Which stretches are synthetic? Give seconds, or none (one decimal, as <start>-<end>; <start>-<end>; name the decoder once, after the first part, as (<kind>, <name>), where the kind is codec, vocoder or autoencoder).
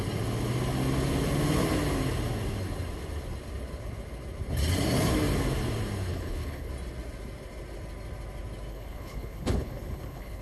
6.1-6.7 (codec, HILCodec); 8.7-10.4